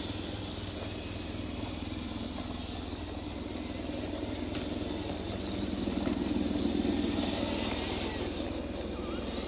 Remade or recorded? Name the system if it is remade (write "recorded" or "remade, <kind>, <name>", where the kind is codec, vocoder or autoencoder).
recorded